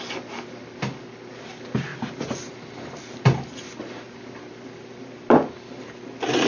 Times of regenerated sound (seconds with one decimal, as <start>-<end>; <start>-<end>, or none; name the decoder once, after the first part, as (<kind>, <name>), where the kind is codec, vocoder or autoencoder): none